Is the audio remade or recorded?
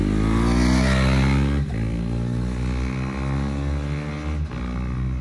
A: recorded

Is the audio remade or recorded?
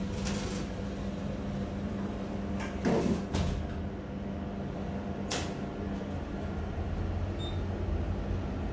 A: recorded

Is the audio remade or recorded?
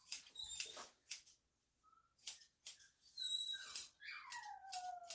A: recorded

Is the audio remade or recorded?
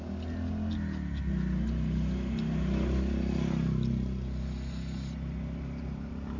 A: recorded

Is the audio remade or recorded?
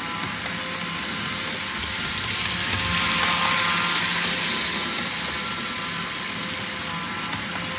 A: recorded